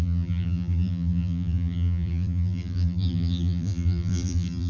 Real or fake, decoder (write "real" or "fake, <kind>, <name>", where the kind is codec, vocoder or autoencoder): fake, vocoder, BigVGAN v2